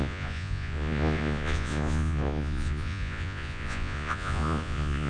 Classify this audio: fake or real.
fake